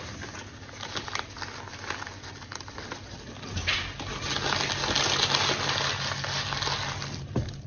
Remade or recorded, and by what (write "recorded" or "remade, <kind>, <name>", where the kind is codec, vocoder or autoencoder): recorded